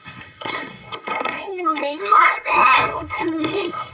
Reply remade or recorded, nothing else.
remade